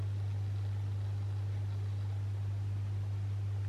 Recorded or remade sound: recorded